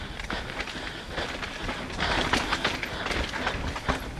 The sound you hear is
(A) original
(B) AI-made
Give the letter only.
A